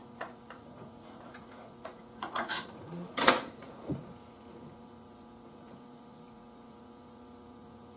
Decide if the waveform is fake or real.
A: fake